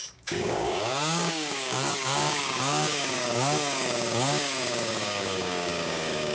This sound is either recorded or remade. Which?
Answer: remade